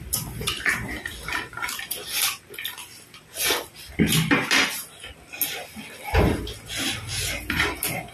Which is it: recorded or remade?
recorded